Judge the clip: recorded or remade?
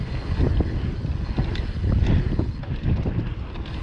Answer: recorded